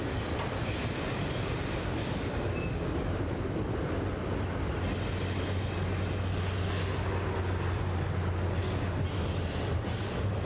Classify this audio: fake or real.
real